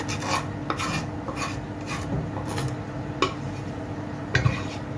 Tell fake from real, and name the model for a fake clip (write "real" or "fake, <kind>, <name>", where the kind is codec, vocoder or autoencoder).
real